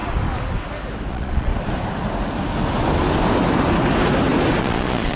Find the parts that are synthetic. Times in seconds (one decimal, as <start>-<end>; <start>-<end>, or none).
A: 1.1-1.5; 4.6-5.2